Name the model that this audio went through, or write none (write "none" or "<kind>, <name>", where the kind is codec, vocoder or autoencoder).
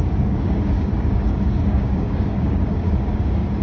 codec, DAC